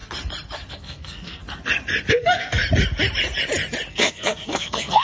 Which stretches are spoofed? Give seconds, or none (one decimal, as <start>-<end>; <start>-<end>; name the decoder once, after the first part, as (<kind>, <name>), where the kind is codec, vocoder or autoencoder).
0.7-1.4 (codec, SNAC); 2.1-2.6; 3.9-5.0